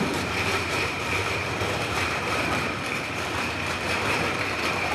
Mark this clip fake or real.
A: fake